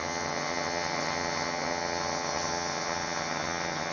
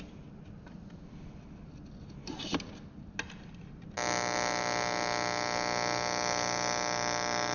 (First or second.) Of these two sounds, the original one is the second